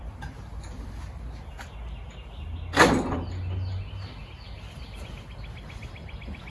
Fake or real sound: real